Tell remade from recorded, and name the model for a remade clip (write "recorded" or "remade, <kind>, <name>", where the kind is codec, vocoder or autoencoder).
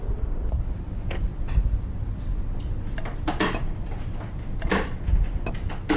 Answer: recorded